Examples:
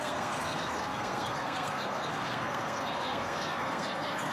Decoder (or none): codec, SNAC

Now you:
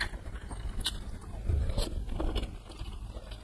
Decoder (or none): none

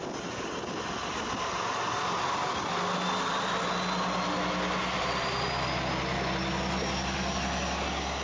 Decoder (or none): none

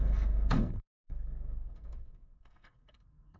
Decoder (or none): codec, SNAC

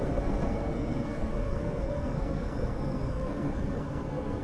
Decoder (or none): codec, SNAC